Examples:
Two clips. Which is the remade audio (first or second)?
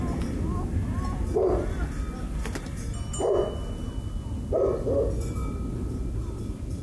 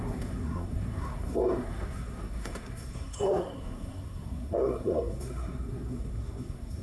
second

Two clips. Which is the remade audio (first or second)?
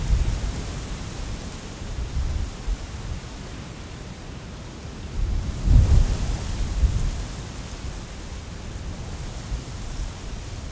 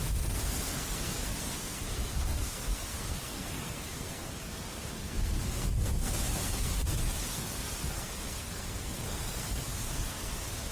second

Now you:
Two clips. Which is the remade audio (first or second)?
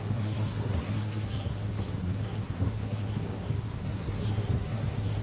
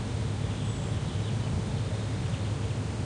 first